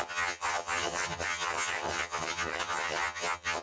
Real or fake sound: fake